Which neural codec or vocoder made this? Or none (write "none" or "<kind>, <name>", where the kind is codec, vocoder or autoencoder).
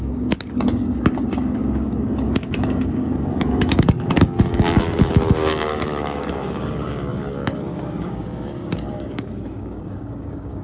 codec, DAC